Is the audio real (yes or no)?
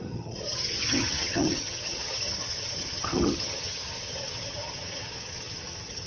no